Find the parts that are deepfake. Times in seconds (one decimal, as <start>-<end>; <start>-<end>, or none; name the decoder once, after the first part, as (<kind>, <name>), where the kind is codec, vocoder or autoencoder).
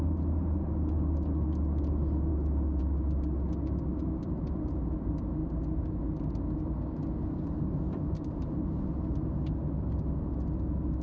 none